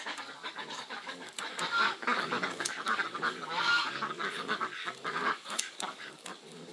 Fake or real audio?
fake